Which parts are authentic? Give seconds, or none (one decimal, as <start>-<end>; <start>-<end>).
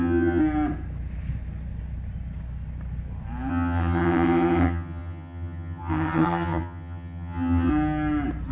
0.4-3.5; 7.7-8.5